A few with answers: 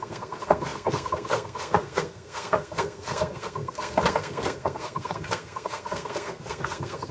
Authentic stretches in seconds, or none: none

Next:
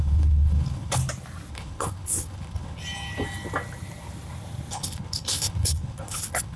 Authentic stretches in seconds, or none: 1.0-1.5; 2.8-4.7

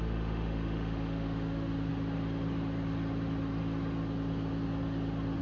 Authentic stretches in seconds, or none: 1.9-5.4